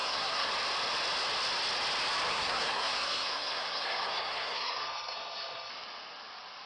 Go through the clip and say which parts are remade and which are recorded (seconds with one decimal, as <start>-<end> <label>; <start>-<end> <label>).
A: 0.0-0.5 remade; 0.5-2.3 recorded; 2.3-5.7 remade; 5.7-6.7 recorded